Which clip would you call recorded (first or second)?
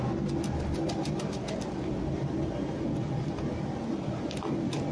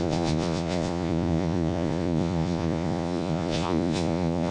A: first